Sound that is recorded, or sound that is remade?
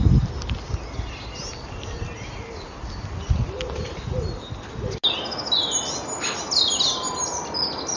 recorded